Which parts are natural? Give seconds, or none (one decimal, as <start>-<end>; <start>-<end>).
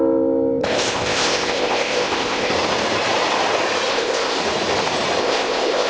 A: 0.0-0.6; 2.5-3.9; 4.4-5.2